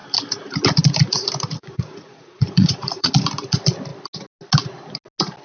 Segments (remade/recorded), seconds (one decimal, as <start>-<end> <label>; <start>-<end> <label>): 0.0-1.6 recorded; 1.6-3.1 remade; 3.1-5.4 recorded